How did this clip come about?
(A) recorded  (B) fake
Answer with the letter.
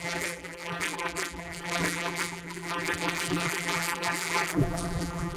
B